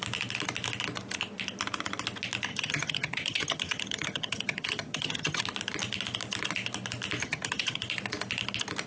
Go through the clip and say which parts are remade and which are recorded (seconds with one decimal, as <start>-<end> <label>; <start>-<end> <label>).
0.0-2.5 recorded; 2.5-5.4 remade; 5.4-7.2 recorded; 7.2-7.8 remade; 7.8-8.9 recorded